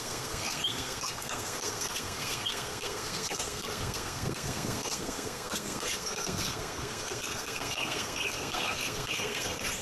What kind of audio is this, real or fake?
fake